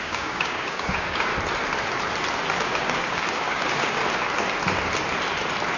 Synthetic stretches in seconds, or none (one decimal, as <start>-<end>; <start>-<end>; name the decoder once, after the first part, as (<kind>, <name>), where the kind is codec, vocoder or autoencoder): 0.0-1.3 (codec, DAC); 2.5-4.0